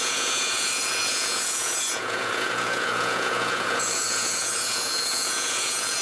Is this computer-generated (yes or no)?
yes